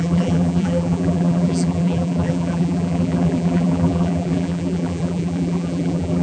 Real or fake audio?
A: fake